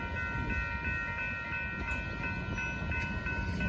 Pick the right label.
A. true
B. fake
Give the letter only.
A